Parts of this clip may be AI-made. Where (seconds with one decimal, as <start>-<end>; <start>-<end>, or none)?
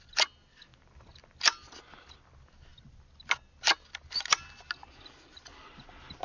none